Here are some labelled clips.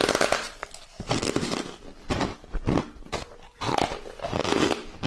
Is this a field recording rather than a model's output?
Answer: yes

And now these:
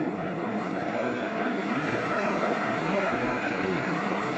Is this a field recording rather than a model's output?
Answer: no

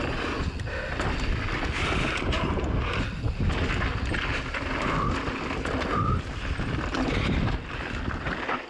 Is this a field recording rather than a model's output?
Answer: yes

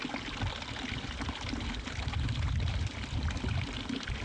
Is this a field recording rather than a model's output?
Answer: yes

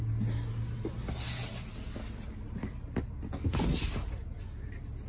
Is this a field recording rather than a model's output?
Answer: yes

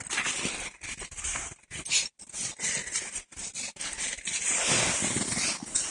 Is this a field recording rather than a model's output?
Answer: yes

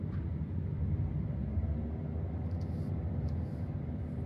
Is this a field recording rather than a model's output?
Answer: yes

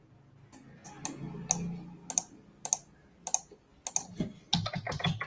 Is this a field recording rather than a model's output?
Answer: yes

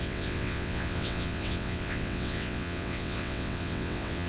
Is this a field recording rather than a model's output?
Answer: no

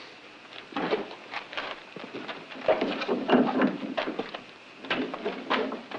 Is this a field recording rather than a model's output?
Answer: yes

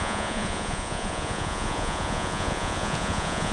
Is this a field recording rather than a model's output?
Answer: no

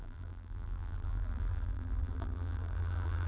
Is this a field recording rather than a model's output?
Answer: no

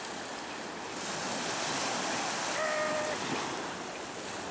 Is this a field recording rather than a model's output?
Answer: yes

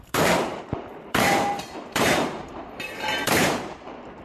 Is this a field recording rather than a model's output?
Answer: no